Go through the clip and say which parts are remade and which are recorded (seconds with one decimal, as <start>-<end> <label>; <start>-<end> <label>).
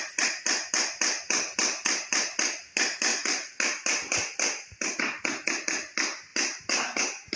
0.0-3.1 recorded; 3.1-5.2 remade; 5.2-7.4 recorded